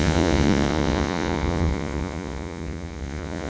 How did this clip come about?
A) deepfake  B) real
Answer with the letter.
A